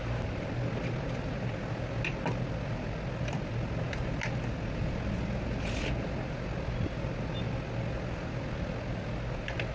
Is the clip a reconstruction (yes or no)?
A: no